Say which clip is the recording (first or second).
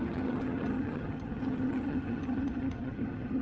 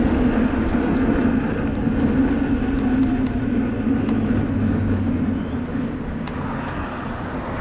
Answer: second